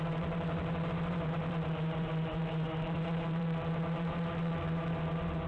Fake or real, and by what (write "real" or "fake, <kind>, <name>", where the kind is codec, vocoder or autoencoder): fake, vocoder, BigVGAN v2